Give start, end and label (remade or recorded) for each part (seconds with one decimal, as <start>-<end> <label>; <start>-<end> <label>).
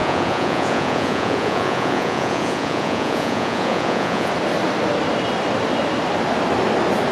0.0-4.3 remade; 4.3-7.1 recorded